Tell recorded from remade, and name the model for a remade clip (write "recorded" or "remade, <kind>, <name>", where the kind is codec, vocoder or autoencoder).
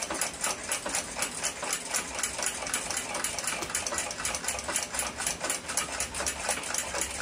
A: recorded